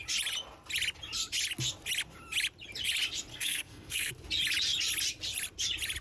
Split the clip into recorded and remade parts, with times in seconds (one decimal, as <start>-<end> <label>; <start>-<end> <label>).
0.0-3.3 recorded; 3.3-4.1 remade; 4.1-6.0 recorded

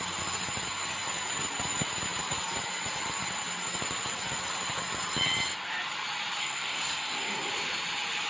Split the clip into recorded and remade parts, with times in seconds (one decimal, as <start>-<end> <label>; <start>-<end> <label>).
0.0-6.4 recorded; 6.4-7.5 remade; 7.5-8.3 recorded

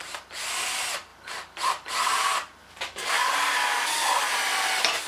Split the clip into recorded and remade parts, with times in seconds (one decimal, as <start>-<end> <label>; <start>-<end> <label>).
0.0-2.6 recorded; 2.6-3.3 remade; 3.3-5.1 recorded

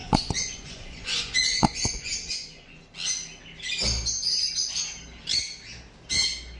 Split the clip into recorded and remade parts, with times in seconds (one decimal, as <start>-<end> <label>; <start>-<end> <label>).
0.0-2.8 remade; 2.8-6.6 recorded

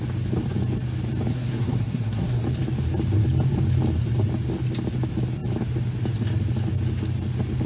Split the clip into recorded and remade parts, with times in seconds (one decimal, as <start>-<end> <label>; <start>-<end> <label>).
0.0-1.3 recorded; 1.3-2.4 remade; 2.4-7.7 recorded